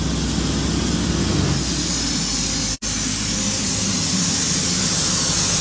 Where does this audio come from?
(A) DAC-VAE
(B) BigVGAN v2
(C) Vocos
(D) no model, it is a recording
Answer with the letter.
D